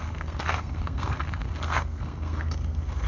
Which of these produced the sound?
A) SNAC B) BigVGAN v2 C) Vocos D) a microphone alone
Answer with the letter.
A